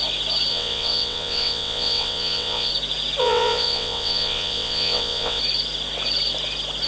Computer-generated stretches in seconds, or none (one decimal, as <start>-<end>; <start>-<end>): 0.5-2.7; 3.2-5.4